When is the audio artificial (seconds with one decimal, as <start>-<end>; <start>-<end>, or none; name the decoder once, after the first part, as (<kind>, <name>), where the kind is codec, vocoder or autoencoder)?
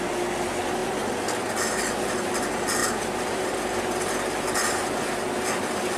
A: none